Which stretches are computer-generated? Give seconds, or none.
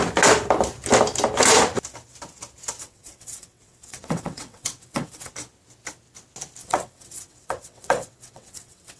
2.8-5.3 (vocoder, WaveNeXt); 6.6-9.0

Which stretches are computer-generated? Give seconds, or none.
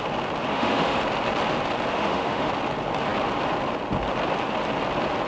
0.5-1.0 (autoencoder, DAC-VAE); 1.9-2.5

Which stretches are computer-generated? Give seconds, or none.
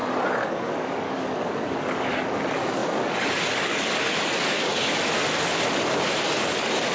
0.0-4.8 (codec, DAC); 6.2-6.9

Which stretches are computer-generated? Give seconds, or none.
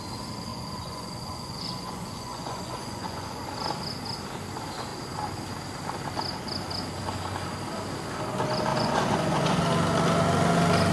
0.5-3.4 (vocoder, Vocos); 8.7-9.6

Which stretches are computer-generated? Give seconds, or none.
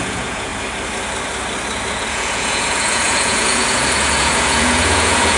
0.0-0.5 (vocoder, Vocos); 1.9-5.4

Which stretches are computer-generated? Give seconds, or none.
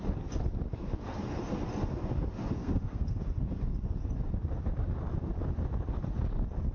2.6-3.2 (codec, SNAC)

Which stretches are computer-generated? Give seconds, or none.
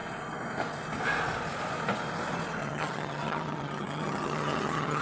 2.6-5.0 (vocoder, HiFi-GAN)